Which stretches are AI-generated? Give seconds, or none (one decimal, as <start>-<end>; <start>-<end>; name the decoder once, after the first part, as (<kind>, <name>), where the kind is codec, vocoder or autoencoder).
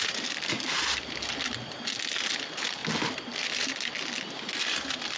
none